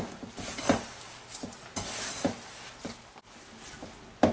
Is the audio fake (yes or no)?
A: no